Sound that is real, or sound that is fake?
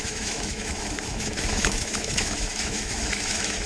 fake